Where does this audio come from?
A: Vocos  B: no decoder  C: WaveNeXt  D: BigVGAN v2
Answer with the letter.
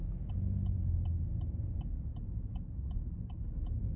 B